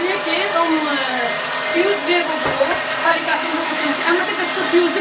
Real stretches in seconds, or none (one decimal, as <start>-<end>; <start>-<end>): 0.0-3.3; 4.2-5.0